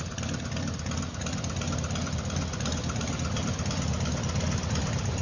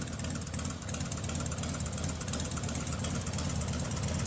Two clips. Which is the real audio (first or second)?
second